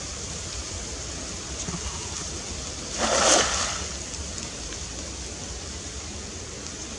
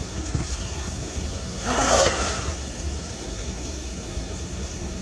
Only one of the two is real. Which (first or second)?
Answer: first